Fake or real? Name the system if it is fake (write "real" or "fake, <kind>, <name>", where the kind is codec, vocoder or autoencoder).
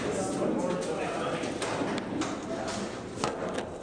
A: real